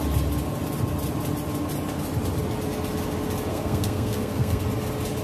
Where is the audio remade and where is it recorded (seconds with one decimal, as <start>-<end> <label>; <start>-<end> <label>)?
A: 0.0-3.5 recorded; 3.5-4.6 remade; 4.6-5.2 recorded